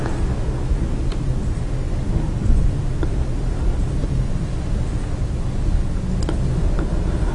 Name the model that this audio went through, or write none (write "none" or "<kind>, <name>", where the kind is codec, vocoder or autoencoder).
none